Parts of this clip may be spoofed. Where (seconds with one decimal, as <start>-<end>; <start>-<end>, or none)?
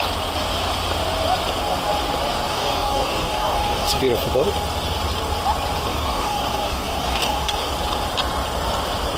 2.5-4.0; 5.9-7.7